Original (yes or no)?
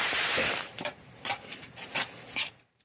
no